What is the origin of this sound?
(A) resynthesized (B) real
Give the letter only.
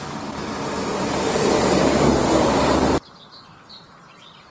B